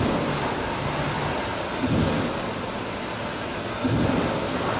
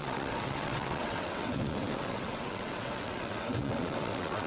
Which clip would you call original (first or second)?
first